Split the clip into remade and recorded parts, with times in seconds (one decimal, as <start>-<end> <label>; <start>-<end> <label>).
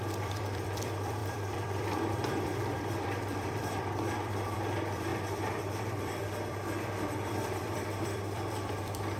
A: 0.0-9.2 remade